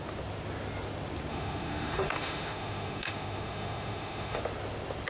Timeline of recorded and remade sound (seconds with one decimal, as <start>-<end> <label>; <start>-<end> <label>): 0.0-1.3 recorded; 1.3-4.4 remade; 4.4-5.1 recorded